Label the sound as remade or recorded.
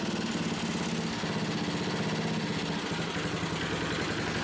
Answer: recorded